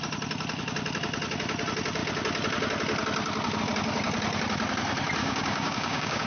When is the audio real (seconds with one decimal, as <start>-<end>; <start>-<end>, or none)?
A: 0.0-5.2